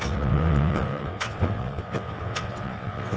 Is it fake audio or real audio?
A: fake